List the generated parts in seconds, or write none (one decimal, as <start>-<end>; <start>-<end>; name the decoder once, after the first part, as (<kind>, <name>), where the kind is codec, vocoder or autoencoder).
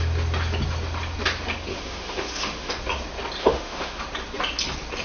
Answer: 1.7-2.7 (autoencoder, DAC-VAE); 3.4-4.0